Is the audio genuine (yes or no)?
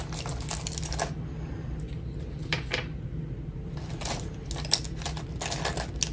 yes